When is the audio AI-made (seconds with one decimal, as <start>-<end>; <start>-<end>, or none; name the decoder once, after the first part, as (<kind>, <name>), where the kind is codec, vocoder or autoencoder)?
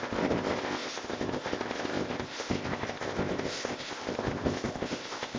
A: 0.0-5.4 (codec, ZipCodec)